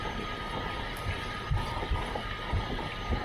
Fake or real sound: real